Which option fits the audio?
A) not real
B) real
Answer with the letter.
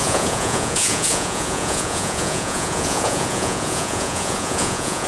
A